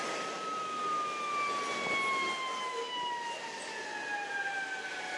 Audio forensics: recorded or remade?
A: recorded